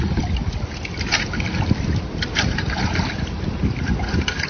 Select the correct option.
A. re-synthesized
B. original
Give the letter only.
B